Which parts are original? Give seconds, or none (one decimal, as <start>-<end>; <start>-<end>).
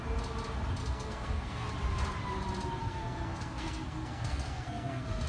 0.0-0.8; 1.7-2.8